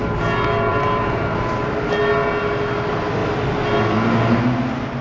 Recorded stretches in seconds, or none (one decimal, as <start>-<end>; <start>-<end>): 0.0-0.7; 1.8-5.0